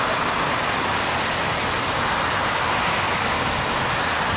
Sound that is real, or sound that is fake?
real